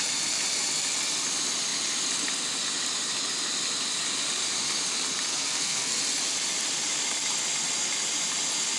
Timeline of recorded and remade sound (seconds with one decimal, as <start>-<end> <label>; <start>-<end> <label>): 0.0-5.3 recorded; 5.3-6.0 remade; 6.0-8.8 recorded

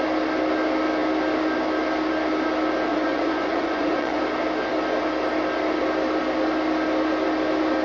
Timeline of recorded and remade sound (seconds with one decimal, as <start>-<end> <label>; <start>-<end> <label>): 0.0-2.9 recorded; 2.9-4.2 remade; 4.2-7.8 recorded

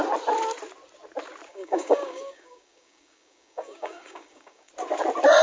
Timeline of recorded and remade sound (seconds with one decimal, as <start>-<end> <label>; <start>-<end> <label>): 0.0-1.5 recorded; 1.5-4.7 remade; 4.7-5.4 recorded

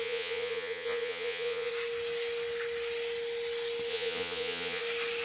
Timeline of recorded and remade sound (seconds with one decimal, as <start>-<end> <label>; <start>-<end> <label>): 0.0-1.7 remade; 1.7-3.9 recorded; 3.9-4.8 remade; 4.8-5.2 recorded

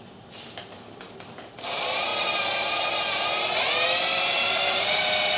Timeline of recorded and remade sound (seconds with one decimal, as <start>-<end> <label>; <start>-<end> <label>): 0.0-2.1 remade; 2.1-5.4 recorded

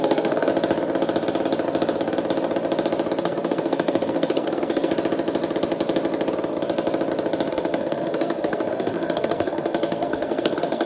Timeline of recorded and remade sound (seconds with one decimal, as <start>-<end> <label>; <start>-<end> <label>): 0.0-0.5 remade; 0.5-3.2 recorded; 3.2-4.9 remade; 4.9-7.5 recorded; 7.5-10.9 remade

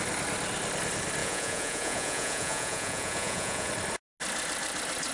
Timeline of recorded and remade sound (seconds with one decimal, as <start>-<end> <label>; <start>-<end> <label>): 0.0-1.2 recorded; 1.2-3.7 remade; 3.7-5.1 recorded